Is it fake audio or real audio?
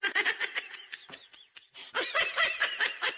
real